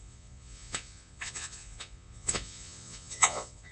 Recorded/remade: remade